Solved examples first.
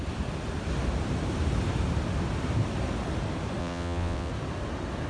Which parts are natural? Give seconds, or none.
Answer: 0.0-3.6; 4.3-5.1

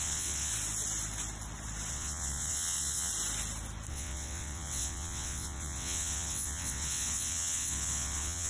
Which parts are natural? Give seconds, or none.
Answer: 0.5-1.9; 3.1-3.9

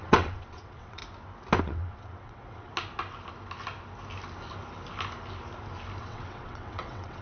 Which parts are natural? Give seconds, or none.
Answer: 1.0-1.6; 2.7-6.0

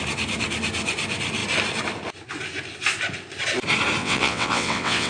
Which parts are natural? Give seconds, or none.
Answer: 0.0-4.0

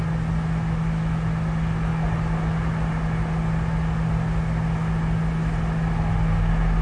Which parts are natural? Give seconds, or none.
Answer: 0.0-6.8